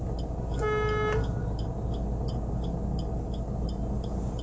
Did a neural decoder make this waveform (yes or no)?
no